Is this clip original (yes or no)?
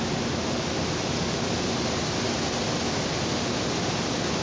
yes